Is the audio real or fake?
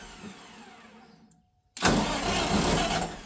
real